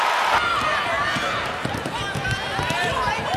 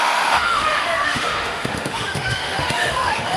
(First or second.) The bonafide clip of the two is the first